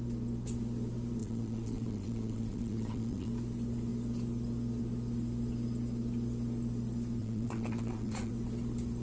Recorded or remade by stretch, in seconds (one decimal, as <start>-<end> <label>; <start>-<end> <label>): 0.0-1.2 recorded; 1.2-3.3 remade; 3.3-7.2 recorded; 7.2-8.3 remade; 8.3-9.0 recorded